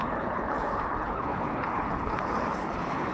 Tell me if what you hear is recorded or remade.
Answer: remade